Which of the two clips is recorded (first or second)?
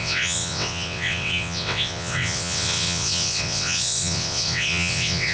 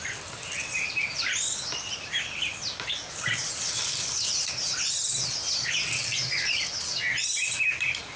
second